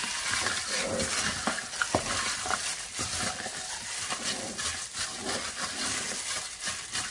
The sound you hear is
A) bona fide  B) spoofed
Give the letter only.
A